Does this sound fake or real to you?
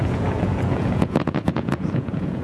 fake